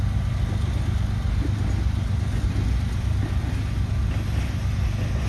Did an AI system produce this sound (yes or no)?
no